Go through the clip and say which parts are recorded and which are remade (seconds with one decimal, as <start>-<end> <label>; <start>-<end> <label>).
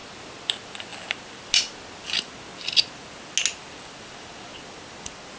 0.0-5.4 recorded